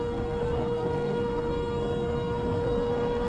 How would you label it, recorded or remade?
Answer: remade